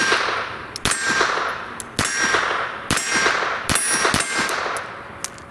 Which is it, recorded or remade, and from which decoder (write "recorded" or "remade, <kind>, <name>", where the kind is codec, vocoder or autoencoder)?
recorded